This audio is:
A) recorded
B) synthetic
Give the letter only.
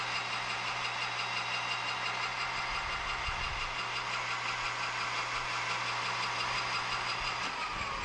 A